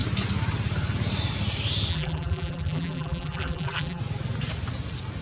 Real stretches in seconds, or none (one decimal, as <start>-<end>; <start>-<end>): 0.0-1.9; 4.0-5.2

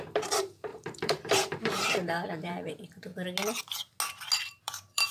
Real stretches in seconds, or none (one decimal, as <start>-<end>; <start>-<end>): 3.1-4.6